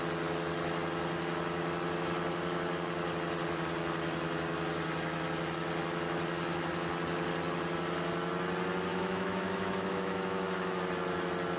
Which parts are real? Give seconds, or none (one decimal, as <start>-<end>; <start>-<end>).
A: 0.0-8.9; 10.8-11.6